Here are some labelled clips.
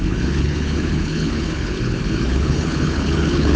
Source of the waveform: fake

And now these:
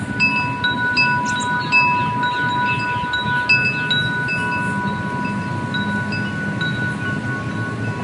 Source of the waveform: real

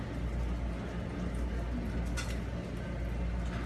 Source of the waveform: real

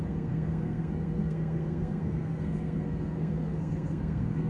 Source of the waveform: fake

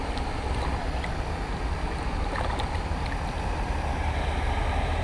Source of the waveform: real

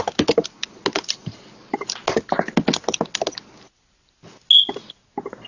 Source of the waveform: real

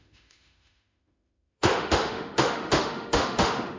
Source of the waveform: fake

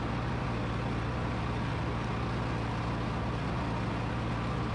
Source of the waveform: real